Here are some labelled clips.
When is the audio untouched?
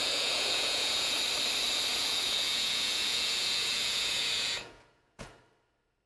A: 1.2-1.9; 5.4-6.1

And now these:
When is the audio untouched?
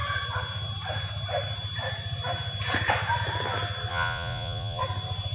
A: 0.0-3.9; 4.8-5.3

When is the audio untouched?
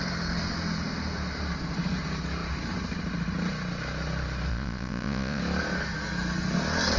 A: 0.0-4.5; 5.4-7.0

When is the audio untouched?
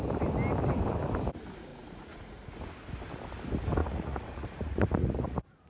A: 0.0-1.7; 2.4-3.8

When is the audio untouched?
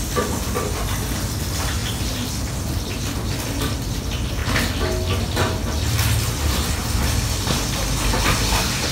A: 0.0-8.9